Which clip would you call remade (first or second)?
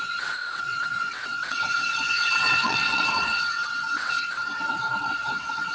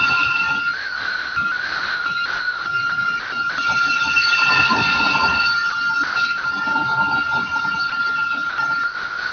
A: first